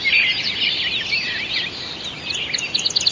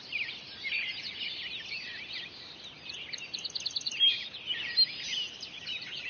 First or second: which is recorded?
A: first